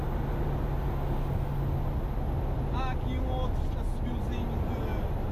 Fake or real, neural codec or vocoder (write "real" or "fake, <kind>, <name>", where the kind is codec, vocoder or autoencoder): real